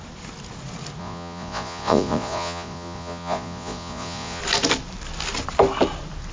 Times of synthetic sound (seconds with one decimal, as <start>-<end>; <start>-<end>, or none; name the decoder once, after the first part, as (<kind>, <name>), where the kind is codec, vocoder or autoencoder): 1.0-4.4 (vocoder, Vocos)